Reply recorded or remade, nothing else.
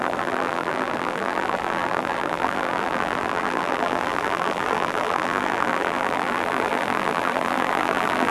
remade